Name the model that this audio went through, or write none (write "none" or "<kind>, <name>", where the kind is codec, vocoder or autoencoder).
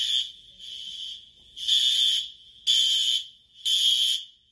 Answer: none